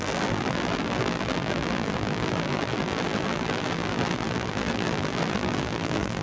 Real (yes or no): no